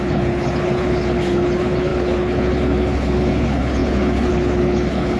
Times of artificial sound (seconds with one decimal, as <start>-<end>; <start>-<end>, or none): 0.0-5.2